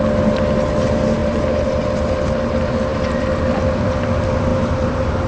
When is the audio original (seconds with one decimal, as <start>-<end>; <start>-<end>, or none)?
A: 0.0-1.2; 1.8-4.5